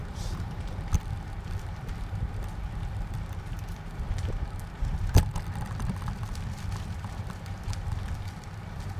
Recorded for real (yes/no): no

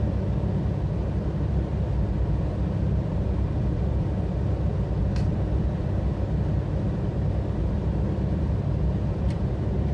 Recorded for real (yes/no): no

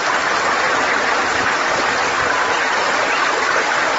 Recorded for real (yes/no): yes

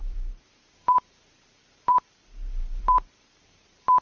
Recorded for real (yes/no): no